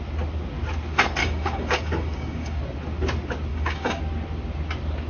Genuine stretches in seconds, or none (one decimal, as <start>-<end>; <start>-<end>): 0.0-1.2; 2.6-3.5; 4.0-5.1